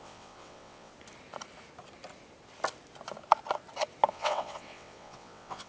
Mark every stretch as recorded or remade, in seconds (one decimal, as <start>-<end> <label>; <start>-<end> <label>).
0.0-0.9 remade; 0.9-4.1 recorded; 4.1-5.7 remade